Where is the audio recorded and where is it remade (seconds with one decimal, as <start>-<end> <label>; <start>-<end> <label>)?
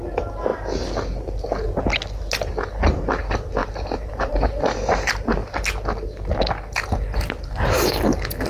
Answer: 0.0-3.6 recorded; 3.6-4.5 remade; 4.5-8.5 recorded